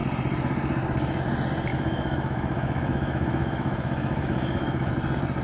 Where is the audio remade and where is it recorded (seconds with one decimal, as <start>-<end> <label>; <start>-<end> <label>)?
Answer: 0.0-1.7 recorded; 1.7-4.9 remade; 4.9-5.4 recorded